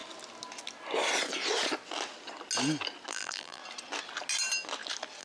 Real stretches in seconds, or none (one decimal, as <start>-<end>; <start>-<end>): 0.0-3.1; 3.6-5.2